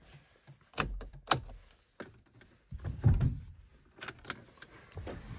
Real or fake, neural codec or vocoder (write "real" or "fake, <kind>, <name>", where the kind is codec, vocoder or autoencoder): real